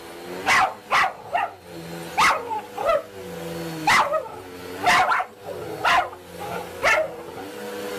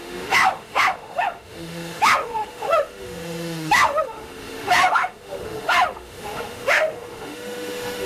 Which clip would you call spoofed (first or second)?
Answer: second